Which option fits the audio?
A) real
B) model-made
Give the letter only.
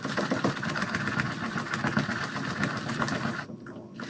A